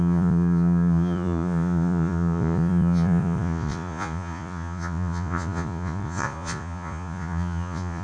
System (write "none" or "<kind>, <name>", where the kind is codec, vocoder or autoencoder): vocoder, Vocos